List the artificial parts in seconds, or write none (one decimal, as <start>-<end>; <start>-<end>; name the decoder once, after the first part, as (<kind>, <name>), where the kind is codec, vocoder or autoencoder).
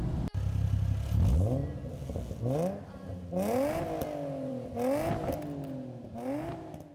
none